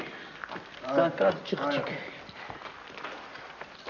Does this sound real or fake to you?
real